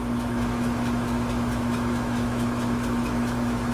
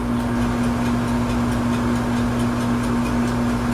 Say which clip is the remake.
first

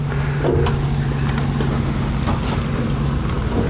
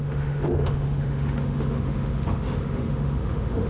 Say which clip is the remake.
second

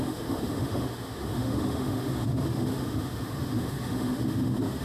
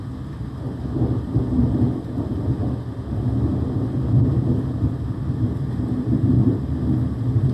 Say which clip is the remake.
first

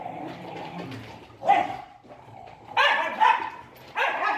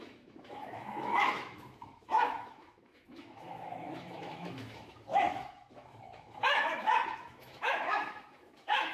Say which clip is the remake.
second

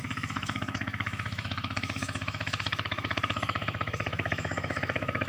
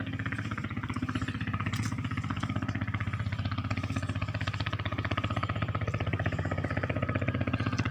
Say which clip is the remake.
first